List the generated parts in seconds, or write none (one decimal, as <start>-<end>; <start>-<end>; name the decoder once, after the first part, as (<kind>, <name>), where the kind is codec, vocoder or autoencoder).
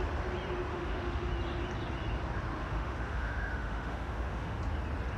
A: 0.7-1.3 (autoencoder, DAC-VAE); 2.6-4.6